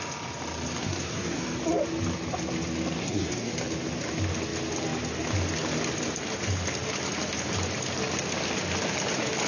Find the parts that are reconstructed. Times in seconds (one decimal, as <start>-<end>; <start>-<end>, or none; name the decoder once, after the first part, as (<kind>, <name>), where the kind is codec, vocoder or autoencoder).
0.8-1.4 (codec, SNAC); 3.0-3.5